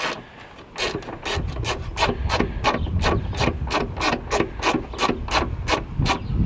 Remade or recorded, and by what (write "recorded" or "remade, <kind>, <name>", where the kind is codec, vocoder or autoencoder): recorded